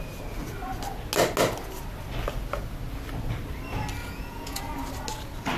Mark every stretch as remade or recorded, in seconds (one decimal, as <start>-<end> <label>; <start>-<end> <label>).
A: 0.0-4.0 recorded; 4.0-4.6 remade; 4.6-5.6 recorded